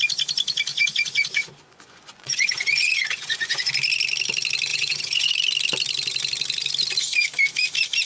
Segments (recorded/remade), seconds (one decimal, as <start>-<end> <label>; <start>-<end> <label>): 0.0-0.7 recorded; 0.7-3.7 remade; 3.7-4.7 recorded; 4.7-5.3 remade; 5.3-8.1 recorded